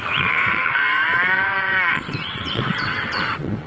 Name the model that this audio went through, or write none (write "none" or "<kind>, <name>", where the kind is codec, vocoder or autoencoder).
vocoder, WaveNeXt